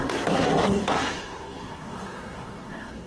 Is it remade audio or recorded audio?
remade